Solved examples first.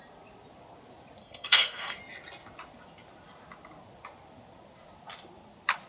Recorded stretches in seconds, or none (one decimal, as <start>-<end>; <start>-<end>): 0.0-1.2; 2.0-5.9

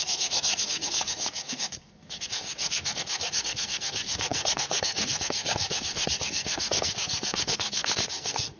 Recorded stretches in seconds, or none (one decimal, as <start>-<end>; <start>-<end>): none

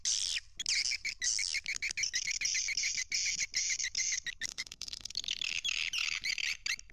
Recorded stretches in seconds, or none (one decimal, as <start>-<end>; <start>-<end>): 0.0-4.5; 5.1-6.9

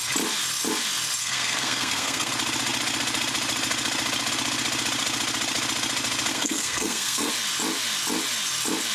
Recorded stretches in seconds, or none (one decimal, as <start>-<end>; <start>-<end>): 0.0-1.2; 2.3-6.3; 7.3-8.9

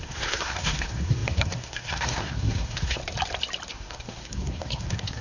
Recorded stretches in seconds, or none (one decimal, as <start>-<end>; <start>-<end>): 3.0-3.7

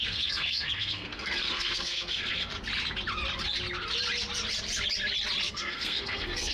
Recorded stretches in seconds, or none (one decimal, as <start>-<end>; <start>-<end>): 2.5-5.5

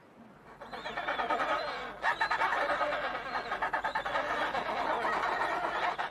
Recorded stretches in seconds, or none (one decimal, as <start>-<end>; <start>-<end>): 0.0-6.1